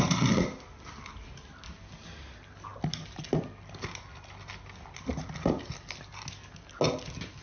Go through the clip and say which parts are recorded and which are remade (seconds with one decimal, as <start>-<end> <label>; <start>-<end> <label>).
0.0-7.4 recorded